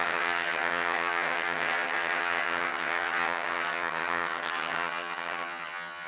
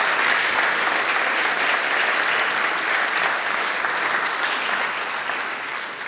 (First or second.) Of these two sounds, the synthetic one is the first